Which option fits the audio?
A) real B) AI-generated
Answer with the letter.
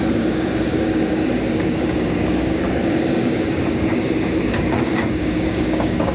B